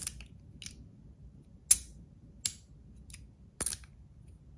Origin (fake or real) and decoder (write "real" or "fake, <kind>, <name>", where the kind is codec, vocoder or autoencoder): real